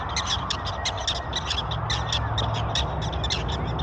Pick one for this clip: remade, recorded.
recorded